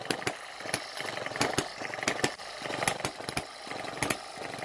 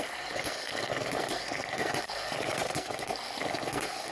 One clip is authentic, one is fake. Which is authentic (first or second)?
first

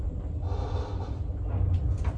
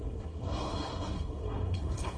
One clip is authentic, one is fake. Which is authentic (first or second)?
first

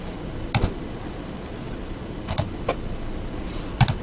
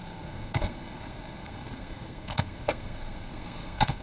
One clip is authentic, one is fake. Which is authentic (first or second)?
first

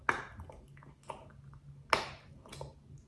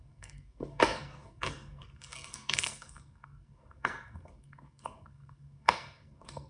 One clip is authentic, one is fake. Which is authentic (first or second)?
first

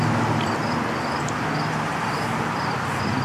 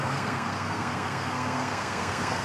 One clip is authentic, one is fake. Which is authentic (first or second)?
first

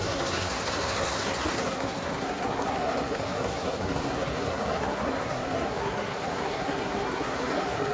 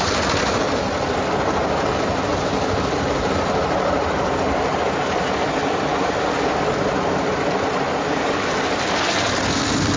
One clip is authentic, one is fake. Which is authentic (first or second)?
second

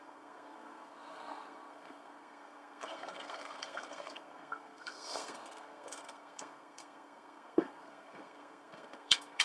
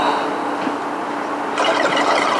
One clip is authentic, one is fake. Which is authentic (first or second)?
second